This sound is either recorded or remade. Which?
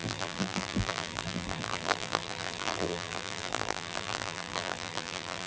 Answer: remade